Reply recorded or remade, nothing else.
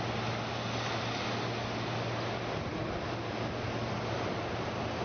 recorded